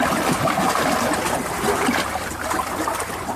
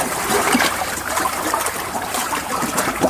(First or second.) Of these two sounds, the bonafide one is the first